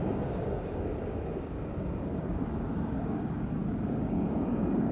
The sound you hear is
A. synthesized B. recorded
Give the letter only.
A